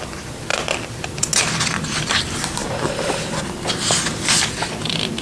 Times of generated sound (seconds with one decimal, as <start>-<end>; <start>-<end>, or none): none